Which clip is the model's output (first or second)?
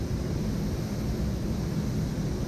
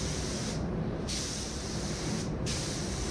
second